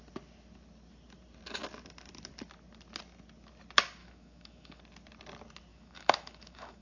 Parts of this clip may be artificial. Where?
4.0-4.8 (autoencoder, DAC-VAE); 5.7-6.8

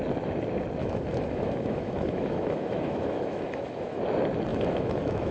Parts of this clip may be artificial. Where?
0.8-4.0 (autoencoder, DAC-VAE); 4.5-5.3